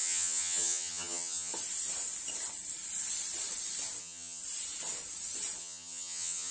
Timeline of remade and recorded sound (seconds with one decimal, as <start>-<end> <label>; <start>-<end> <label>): 0.0-1.5 remade; 1.5-4.0 recorded; 4.0-4.4 remade; 4.4-5.6 recorded; 5.6-6.5 remade